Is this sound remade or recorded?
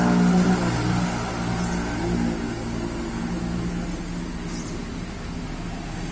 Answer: recorded